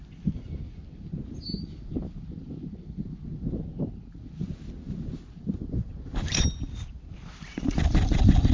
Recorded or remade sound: recorded